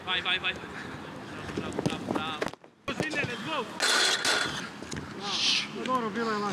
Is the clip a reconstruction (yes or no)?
no